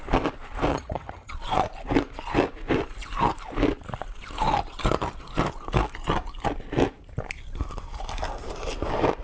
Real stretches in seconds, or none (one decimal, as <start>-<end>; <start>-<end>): 0.0-0.7; 1.3-9.2